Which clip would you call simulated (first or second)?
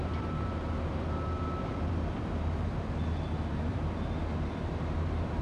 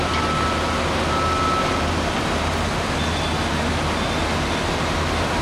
first